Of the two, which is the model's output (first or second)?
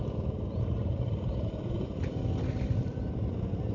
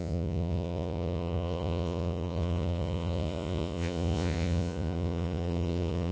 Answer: second